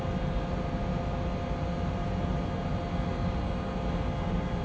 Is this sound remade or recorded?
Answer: recorded